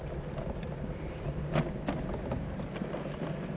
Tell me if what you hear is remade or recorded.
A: recorded